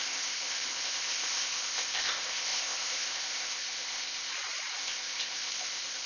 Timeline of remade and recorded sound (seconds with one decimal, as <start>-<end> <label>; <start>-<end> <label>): 0.0-4.3 remade; 4.3-4.8 recorded; 4.8-6.1 remade